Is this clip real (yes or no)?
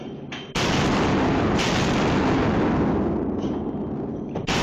yes